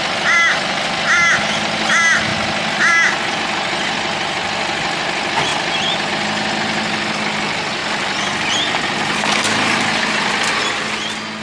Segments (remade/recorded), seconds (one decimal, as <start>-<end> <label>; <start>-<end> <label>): 0.0-11.4 recorded